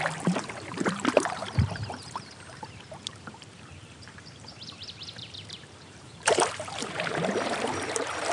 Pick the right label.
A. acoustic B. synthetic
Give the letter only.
B